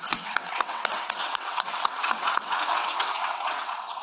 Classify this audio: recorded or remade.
remade